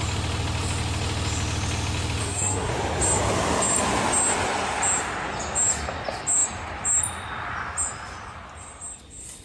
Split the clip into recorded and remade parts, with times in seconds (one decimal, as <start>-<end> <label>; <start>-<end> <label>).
0.0-2.2 recorded; 2.2-2.7 remade; 2.7-9.4 recorded